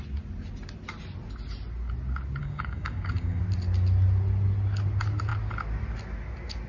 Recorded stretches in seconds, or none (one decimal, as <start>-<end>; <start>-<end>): 0.0-2.4; 3.4-6.7